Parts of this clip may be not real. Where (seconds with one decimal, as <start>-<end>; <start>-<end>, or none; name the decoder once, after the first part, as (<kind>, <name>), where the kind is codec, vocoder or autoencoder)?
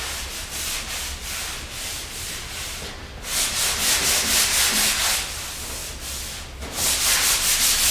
none